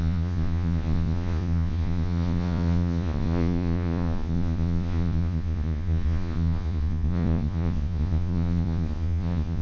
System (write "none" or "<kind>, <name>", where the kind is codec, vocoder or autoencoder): vocoder, Vocos